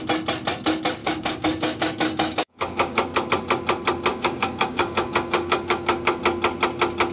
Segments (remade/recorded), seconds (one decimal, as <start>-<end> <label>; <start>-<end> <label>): 0.0-1.0 recorded; 1.0-3.3 remade; 3.3-4.1 recorded; 4.1-6.2 remade; 6.2-7.1 recorded